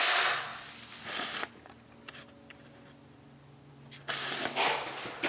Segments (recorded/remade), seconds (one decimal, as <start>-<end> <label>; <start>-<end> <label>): 0.0-5.3 recorded

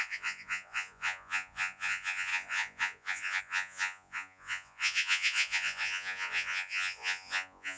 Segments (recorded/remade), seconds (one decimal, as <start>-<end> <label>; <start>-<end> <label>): 0.0-7.8 remade

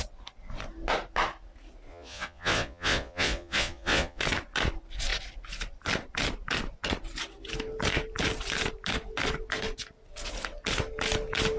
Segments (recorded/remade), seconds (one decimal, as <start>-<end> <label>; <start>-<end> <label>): 0.0-1.9 recorded; 1.9-4.2 remade; 4.2-11.6 recorded

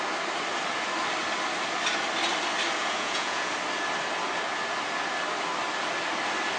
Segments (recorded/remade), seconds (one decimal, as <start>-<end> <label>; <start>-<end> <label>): 0.0-2.8 recorded; 2.8-3.5 remade; 3.5-6.6 recorded

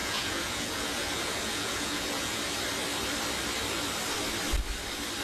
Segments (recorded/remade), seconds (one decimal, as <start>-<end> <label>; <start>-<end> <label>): 0.0-2.4 remade; 2.4-5.2 recorded

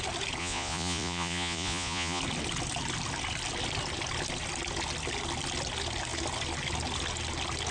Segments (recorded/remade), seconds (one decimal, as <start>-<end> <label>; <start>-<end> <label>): 0.0-0.4 recorded; 0.4-2.2 remade; 2.2-7.7 recorded